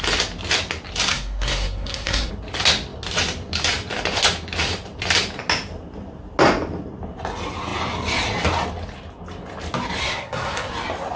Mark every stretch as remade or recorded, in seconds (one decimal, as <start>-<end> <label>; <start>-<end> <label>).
0.0-1.1 recorded; 1.1-2.3 remade; 2.3-10.0 recorded; 10.0-10.7 remade; 10.7-11.2 recorded